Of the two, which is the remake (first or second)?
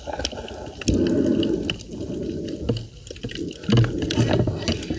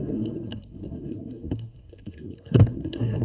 second